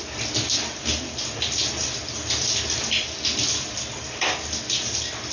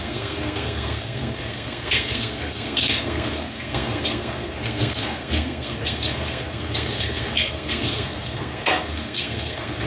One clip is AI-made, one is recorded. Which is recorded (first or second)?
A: first